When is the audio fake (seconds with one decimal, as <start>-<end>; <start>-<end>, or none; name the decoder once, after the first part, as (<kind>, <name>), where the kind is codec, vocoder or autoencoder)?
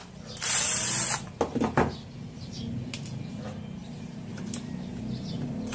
0.0-0.7 (vocoder, BigVGAN v2); 3.8-4.9